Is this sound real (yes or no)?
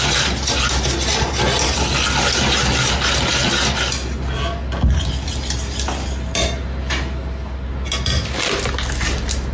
yes